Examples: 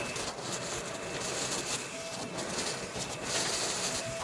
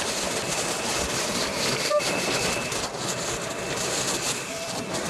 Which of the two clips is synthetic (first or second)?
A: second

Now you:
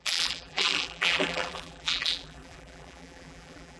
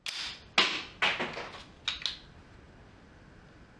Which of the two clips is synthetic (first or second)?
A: first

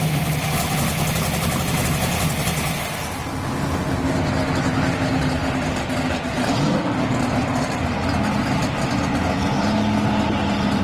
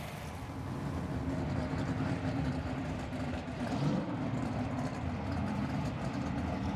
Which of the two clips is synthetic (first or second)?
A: second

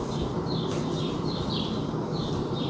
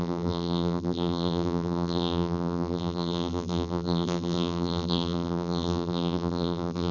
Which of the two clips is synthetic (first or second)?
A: second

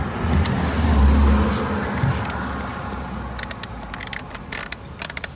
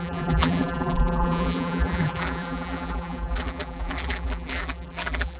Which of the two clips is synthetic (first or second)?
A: second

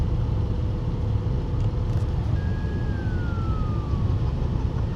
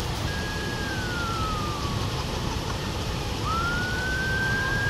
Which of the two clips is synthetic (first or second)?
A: second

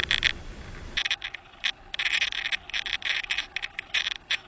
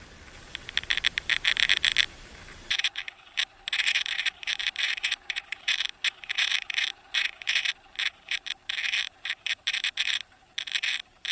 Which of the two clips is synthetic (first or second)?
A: second